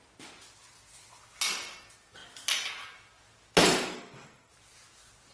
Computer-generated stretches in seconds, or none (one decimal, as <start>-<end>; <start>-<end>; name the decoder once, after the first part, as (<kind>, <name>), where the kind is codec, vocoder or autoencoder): 3.9-4.5 (codec, SNAC)